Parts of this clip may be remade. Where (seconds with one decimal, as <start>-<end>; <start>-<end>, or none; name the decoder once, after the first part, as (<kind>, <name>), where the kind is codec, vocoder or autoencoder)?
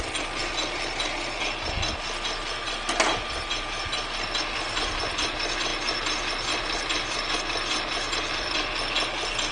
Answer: none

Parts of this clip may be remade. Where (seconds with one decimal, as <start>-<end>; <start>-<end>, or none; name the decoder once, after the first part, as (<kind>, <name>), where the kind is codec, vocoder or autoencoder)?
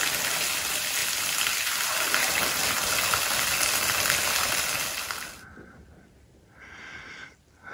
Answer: none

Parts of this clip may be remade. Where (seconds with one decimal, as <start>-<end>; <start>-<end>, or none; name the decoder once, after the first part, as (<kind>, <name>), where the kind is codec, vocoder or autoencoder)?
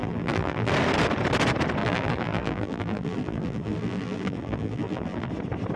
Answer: 0.0-0.7 (vocoder, BigVGAN v2); 1.8-5.3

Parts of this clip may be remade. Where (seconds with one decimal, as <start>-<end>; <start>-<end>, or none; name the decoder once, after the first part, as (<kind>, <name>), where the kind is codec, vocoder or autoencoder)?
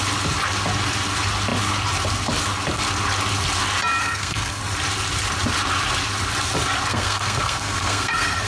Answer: 4.0-4.6 (codec, SNAC); 6.9-8.5